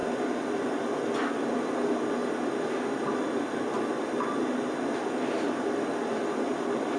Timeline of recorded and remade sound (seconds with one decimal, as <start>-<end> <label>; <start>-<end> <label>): 0.0-7.0 recorded